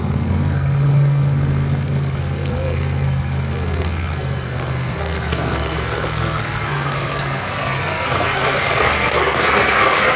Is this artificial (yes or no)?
yes